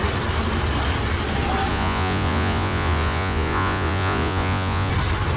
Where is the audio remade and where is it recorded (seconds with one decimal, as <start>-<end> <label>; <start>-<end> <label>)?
0.0-1.7 recorded; 1.7-4.9 remade; 4.9-5.4 recorded